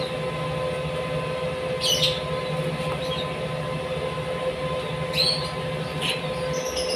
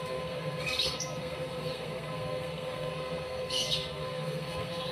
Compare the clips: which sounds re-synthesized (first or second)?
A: second